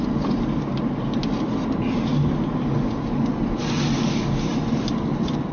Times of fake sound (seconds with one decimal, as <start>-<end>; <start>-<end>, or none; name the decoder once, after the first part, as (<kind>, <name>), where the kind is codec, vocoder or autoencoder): none